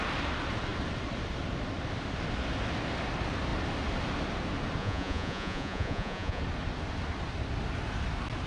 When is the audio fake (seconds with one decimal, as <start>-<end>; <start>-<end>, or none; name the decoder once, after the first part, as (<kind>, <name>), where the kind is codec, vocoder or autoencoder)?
4.8-6.4 (vocoder, Vocos)